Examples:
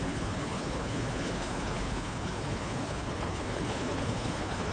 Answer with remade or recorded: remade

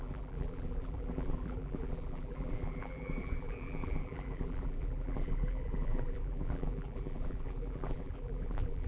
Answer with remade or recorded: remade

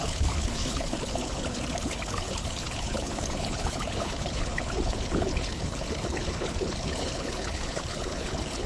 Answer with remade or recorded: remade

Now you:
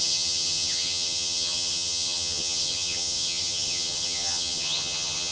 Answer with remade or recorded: remade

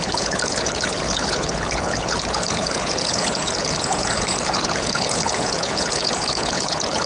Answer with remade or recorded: remade